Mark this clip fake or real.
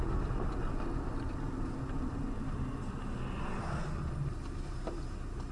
real